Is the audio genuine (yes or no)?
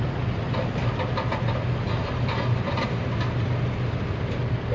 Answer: yes